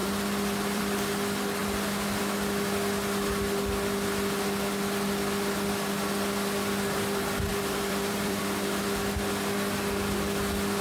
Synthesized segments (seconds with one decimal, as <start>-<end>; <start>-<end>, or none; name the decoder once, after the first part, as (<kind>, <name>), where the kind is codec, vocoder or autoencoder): 0.0-0.8 (vocoder, BigVGAN v2); 7.5-8.4